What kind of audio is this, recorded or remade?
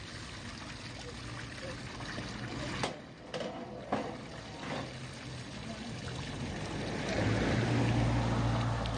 recorded